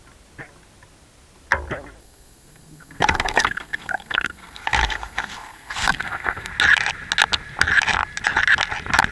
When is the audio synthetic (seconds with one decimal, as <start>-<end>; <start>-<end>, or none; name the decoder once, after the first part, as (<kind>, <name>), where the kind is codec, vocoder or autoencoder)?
2.0-6.5 (codec, SNAC)